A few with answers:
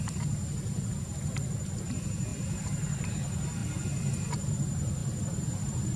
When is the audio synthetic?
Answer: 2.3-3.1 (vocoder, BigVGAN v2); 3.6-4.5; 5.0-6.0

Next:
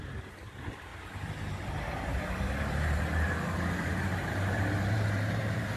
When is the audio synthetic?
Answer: 0.0-0.9 (vocoder, BigVGAN v2); 2.6-5.8

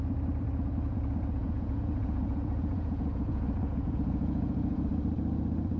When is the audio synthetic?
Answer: 1.4-4.9 (vocoder, Vocos)

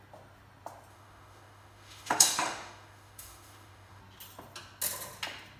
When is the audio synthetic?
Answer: 0.9-4.0 (autoencoder, DAC-VAE)

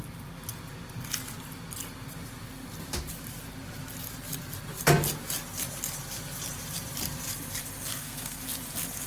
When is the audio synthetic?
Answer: 7.9-8.4 (codec, SNAC)